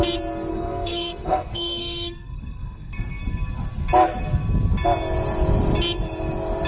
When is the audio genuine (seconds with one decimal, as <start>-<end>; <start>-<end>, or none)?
0.0-0.5; 3.2-6.7